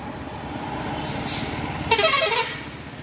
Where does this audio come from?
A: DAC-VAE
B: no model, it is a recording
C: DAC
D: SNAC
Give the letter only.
B